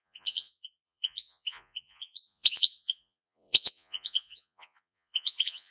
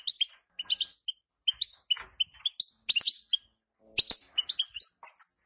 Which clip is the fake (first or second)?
first